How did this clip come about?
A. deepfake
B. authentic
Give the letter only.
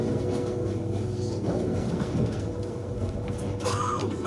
A